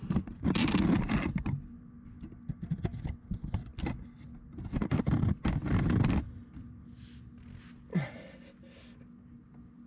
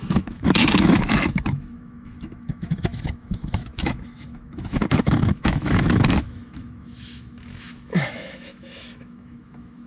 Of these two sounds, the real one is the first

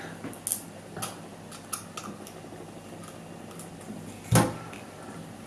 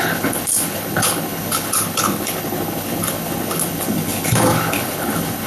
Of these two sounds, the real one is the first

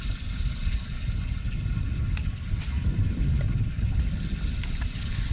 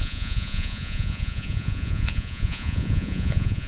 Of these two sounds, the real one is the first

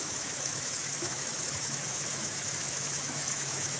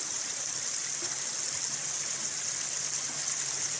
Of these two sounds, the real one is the second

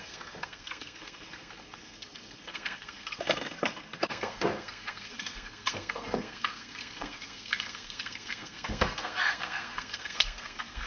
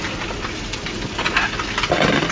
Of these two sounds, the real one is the second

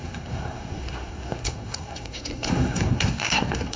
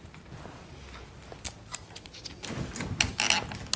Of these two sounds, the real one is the second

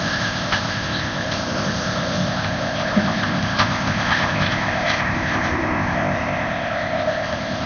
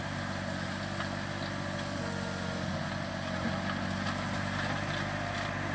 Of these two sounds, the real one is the second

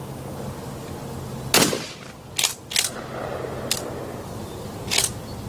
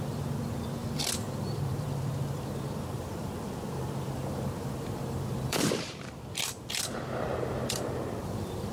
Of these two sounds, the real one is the first